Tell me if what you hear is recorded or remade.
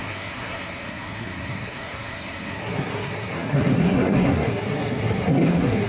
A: remade